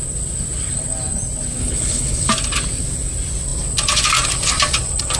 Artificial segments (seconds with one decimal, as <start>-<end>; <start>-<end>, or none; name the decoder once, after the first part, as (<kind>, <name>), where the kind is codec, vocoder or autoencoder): 1.6-2.3 (codec, HILCodec)